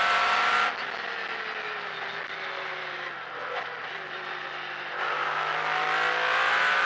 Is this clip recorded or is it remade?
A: recorded